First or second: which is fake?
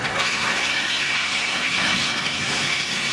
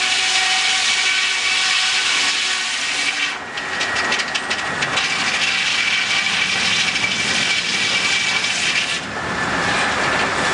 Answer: first